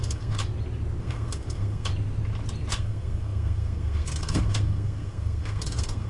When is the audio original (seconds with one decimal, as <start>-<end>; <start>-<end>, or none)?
0.4-1.0; 1.9-2.7